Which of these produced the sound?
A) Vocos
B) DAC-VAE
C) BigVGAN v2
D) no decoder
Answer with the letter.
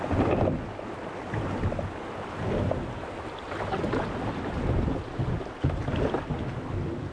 D